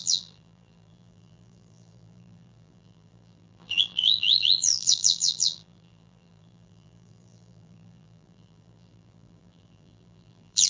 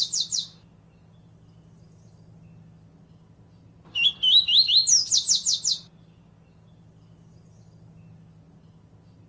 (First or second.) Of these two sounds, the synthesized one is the first